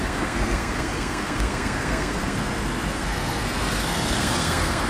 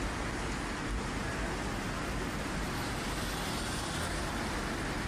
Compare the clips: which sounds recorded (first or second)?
second